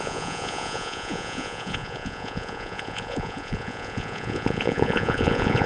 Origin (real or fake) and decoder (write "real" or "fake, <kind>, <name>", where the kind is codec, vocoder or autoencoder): fake, vocoder, Vocos